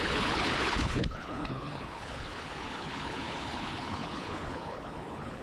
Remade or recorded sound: remade